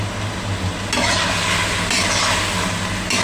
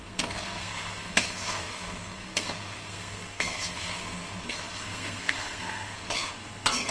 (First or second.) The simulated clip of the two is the second